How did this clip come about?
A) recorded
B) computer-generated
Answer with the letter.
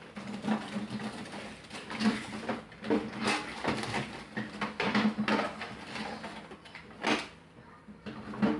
A